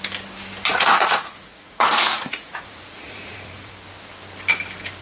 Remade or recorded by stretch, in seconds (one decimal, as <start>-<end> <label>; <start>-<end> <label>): 0.0-0.7 recorded; 0.7-3.7 remade; 3.7-5.0 recorded